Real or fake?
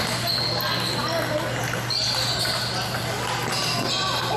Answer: real